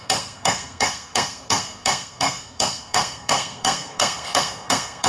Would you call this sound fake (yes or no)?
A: yes